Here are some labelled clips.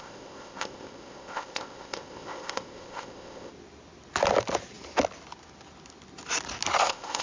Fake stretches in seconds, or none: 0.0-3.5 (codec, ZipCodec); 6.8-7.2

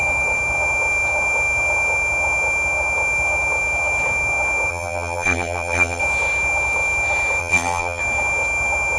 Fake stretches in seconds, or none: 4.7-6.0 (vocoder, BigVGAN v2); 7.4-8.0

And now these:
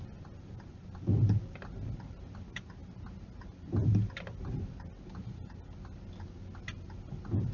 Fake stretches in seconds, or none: none

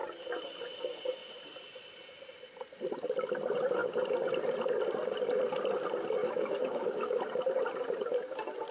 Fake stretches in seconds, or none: 6.2-7.2 (autoencoder, DAC-VAE)